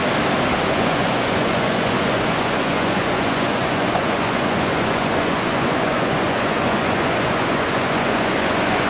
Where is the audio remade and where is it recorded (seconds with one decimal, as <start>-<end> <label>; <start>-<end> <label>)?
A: 0.0-0.7 recorded; 0.7-8.9 remade